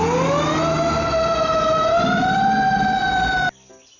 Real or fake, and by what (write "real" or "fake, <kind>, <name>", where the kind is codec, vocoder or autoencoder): real